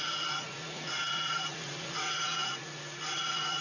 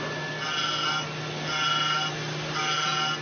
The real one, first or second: second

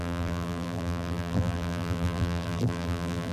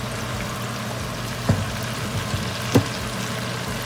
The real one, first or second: second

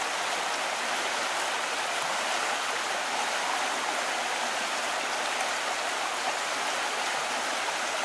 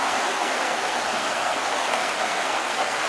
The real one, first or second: first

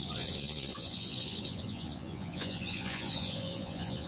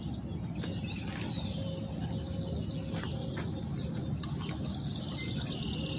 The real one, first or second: second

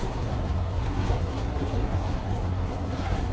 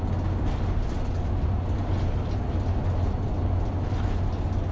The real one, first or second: second